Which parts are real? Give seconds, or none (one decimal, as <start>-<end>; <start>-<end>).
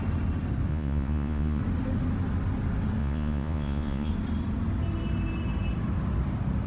0.0-0.7; 1.6-3.0; 4.1-6.7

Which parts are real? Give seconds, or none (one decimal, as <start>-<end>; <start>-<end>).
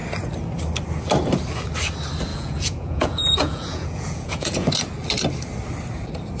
0.0-2.3; 4.7-6.4